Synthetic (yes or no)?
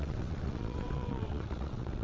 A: yes